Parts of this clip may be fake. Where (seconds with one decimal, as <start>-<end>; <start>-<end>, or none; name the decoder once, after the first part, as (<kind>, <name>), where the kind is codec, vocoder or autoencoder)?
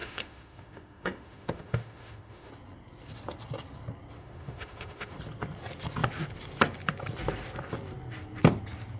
0.0-2.5 (autoencoder, DAC-VAE); 4.2-5.1